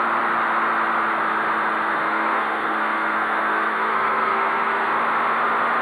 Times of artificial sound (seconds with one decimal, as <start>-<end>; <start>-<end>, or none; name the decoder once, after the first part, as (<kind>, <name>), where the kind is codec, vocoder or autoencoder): 1.9-4.9 (codec, SNAC)